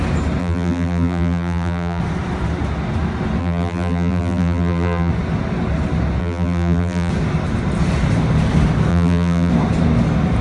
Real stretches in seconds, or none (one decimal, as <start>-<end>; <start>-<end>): 0.0-0.4; 2.0-3.4; 5.1-6.2; 7.1-8.9; 9.5-10.4